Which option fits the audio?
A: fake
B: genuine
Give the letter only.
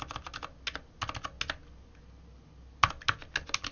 B